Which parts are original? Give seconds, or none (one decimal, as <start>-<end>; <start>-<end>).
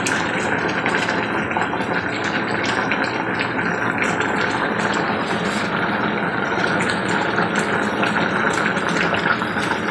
0.0-6.3; 7.1-9.9